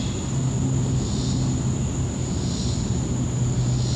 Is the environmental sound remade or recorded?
recorded